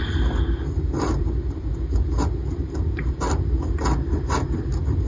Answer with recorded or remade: recorded